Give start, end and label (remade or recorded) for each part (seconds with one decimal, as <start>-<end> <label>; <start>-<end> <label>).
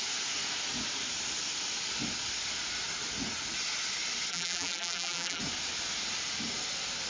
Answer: 0.0-4.3 recorded; 4.3-5.4 remade; 5.4-7.1 recorded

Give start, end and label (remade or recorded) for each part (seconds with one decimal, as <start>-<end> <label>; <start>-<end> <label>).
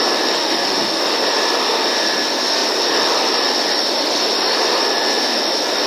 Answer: 0.0-0.4 recorded; 0.4-1.0 remade; 1.0-5.9 recorded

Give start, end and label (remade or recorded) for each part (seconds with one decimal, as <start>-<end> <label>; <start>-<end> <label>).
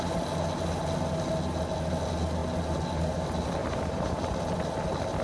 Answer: 0.0-3.6 recorded; 3.6-4.1 remade; 4.1-5.2 recorded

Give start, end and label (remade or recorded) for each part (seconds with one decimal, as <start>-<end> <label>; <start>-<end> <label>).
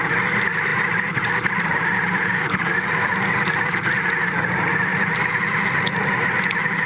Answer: 0.0-6.9 recorded